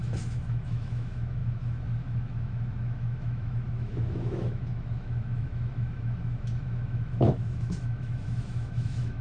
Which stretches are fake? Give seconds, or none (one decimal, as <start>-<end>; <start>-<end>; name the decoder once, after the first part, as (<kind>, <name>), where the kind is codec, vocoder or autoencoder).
0.0-9.2 (autoencoder, DAC-VAE)